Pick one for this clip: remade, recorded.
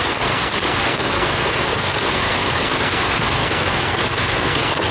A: remade